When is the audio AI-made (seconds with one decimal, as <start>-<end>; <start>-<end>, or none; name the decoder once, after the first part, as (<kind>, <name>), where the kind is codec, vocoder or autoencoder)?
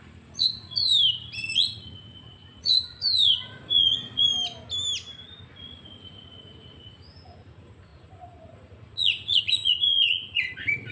0.0-0.9 (vocoder, Vocos); 1.4-4.2; 5.6-10.9